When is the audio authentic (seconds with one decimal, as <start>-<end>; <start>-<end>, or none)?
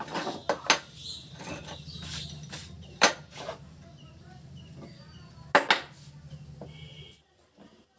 0.0-1.6; 5.0-8.0